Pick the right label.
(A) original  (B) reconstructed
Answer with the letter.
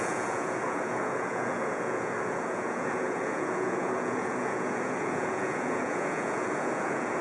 B